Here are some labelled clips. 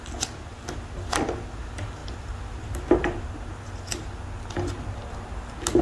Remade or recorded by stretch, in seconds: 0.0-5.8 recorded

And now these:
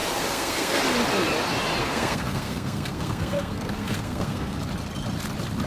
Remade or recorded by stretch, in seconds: 0.0-0.8 remade; 0.8-1.8 recorded; 1.8-4.6 remade; 4.6-5.7 recorded

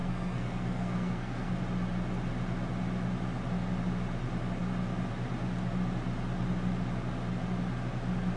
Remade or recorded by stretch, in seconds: 0.0-1.5 remade; 1.5-8.4 recorded

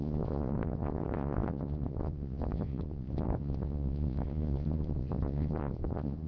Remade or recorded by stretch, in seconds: 0.0-6.3 remade

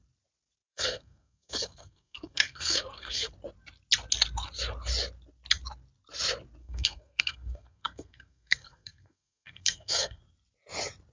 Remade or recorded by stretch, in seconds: 0.0-0.7 recorded; 0.7-3.3 remade; 3.3-6.6 recorded; 6.6-10.2 remade; 10.2-11.1 recorded

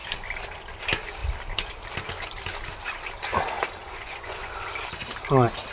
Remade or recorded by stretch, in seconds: 0.0-3.8 recorded; 3.8-4.5 remade; 4.5-5.7 recorded

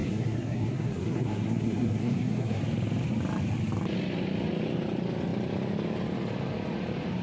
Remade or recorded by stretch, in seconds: 0.0-2.6 remade; 2.6-7.2 recorded